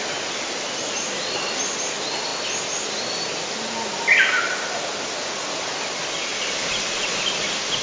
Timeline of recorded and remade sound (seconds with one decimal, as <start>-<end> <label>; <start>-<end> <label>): 0.0-7.8 recorded